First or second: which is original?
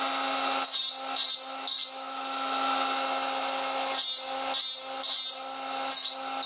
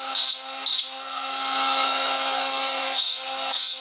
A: first